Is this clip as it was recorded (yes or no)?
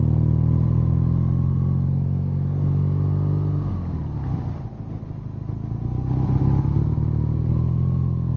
yes